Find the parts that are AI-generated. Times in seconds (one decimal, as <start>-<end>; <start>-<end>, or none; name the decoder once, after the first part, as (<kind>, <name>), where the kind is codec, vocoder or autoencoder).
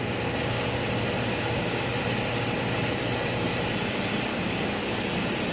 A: 1.3-1.9 (codec, DAC); 4.3-4.9